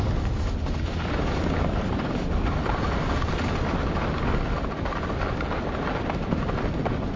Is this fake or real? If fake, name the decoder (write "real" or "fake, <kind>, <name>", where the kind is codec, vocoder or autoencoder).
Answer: real